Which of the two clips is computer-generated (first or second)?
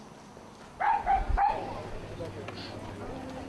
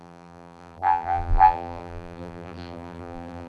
second